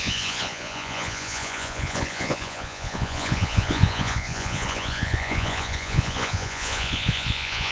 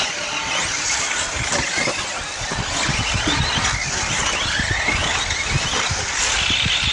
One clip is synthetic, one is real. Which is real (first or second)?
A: second